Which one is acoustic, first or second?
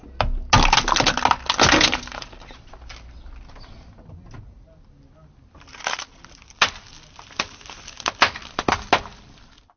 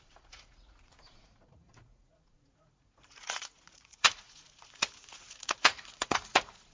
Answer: first